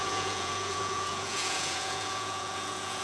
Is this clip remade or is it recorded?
remade